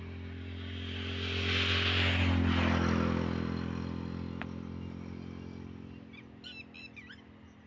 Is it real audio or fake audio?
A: real